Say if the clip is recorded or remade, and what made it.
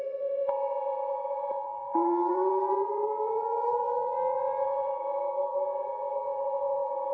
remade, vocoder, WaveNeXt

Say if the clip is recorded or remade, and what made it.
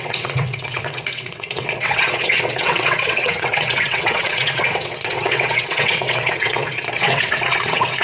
remade, vocoder, WaveNeXt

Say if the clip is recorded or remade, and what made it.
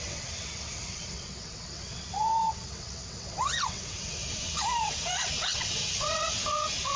remade, vocoder, WaveNeXt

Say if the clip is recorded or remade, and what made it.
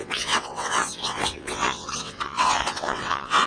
remade, vocoder, WaveNeXt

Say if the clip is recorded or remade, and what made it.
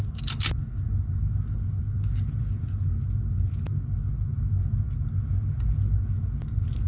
recorded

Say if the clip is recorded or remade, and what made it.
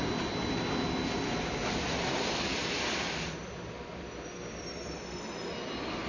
recorded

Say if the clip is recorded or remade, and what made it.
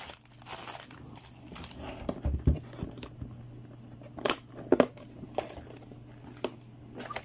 recorded